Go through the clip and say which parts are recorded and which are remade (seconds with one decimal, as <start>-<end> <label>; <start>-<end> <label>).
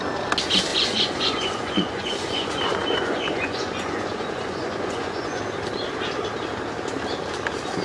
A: 0.0-0.7 recorded; 0.7-5.4 remade; 5.4-7.8 recorded